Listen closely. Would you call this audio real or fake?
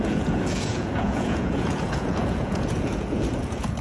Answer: fake